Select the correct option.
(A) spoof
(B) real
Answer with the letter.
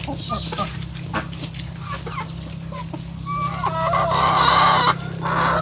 B